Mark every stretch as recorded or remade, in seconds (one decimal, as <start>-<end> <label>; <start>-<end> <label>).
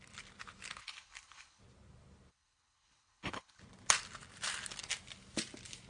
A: 0.0-0.8 recorded; 0.8-1.6 remade; 1.6-2.3 recorded; 2.3-3.6 remade; 3.6-5.9 recorded